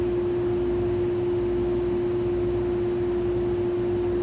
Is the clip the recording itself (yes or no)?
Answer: yes